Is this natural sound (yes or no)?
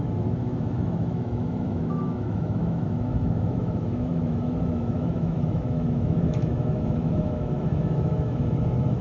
no